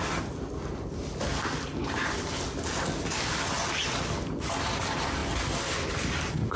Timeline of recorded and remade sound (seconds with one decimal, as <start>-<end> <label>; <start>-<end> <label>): 0.0-6.6 recorded